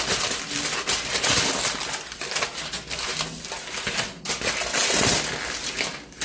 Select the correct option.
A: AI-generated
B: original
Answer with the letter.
B